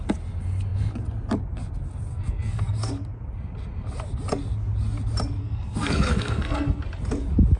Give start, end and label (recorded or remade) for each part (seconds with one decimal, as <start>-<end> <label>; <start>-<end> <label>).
0.0-2.1 recorded; 2.1-2.9 remade; 2.9-5.4 recorded; 5.4-6.8 remade; 6.8-7.6 recorded